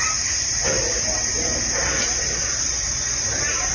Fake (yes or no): no